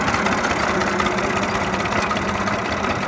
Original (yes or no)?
yes